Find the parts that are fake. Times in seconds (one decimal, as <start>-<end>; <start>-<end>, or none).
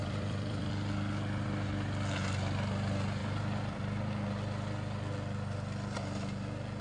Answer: 0.0-0.7; 3.2-5.0